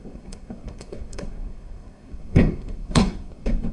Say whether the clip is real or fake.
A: fake